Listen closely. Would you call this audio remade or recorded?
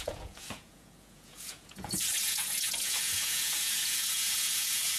remade